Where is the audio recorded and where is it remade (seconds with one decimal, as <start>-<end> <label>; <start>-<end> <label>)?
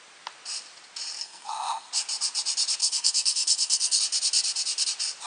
0.0-1.2 recorded; 1.2-1.9 remade; 1.9-2.8 recorded; 2.8-4.0 remade; 4.0-5.3 recorded